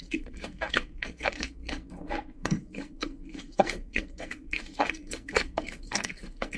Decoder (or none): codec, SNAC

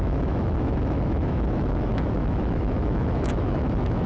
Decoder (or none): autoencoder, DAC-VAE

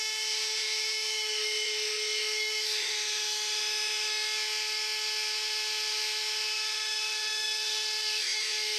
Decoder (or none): autoencoder, DAC-VAE